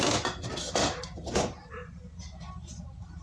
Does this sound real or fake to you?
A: real